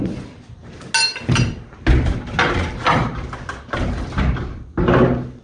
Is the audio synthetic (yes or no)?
no